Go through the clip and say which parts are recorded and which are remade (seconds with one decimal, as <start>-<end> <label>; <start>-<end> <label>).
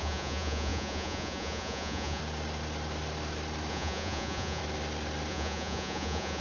0.0-2.2 remade; 2.2-3.7 recorded; 3.7-4.6 remade; 4.6-5.3 recorded; 5.3-6.4 remade